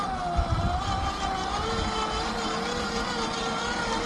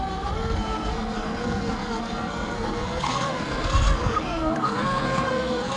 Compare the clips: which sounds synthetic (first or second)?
second